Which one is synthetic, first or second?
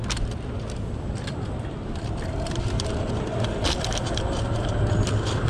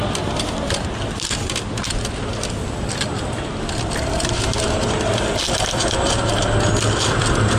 first